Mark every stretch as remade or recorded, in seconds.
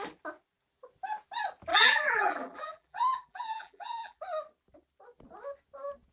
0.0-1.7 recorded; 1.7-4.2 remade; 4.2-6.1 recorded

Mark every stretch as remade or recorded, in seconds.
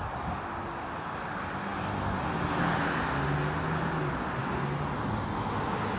0.0-6.0 recorded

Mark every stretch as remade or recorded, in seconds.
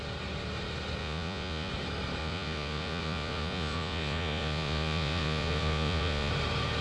0.0-1.0 recorded; 1.0-1.7 remade; 1.7-2.2 recorded; 2.2-6.3 remade; 6.3-6.8 recorded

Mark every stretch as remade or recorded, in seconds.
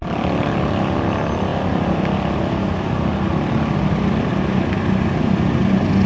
0.0-6.1 recorded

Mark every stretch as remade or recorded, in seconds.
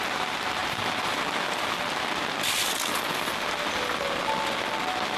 0.0-5.2 recorded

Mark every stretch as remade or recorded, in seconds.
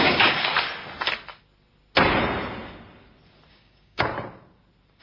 0.0-0.5 remade; 0.5-3.5 recorded; 3.5-4.1 remade; 4.1-5.0 recorded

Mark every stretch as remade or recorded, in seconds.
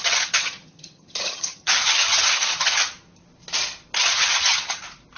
0.0-2.9 remade; 2.9-4.0 recorded; 4.0-4.8 remade; 4.8-5.2 recorded